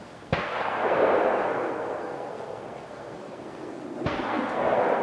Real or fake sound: fake